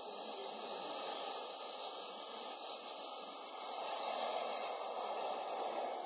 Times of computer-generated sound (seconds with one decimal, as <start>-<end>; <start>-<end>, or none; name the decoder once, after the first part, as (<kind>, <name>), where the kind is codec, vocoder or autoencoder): none